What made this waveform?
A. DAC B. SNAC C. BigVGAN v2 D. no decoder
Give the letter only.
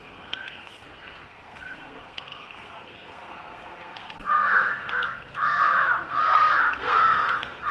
B